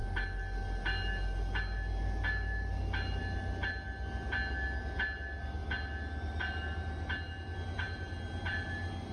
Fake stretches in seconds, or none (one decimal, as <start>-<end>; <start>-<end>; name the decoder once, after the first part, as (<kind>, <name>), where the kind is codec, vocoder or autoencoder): none